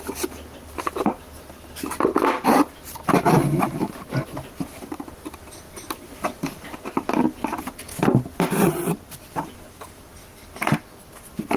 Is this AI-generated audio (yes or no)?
no